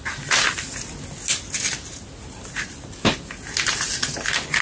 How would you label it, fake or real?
real